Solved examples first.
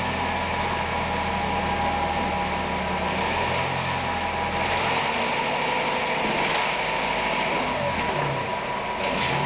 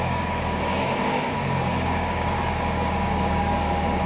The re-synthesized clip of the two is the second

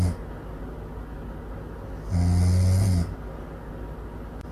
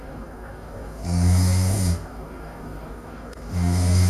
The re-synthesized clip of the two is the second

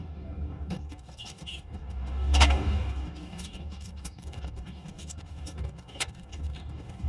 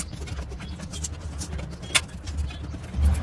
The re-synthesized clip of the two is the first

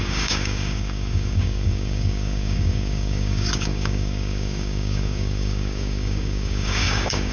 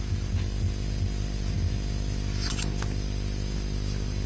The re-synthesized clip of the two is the first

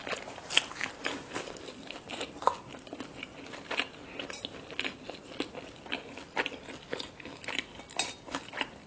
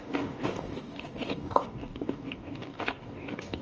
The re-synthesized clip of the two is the second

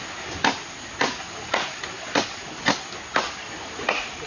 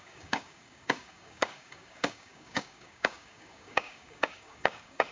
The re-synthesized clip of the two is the second